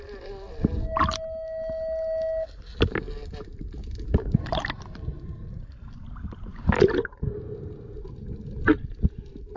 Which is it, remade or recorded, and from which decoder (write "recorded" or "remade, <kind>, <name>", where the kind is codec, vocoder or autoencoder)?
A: recorded